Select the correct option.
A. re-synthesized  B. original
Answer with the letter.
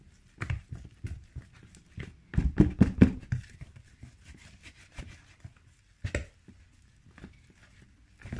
B